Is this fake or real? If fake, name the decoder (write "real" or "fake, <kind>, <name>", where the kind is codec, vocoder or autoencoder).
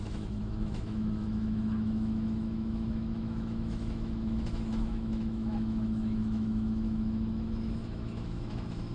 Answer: fake, autoencoder, DAC-VAE